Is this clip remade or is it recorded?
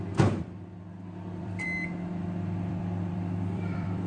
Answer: remade